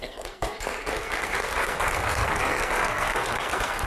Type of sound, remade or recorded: remade